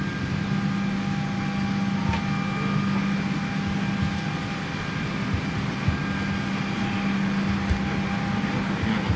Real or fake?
real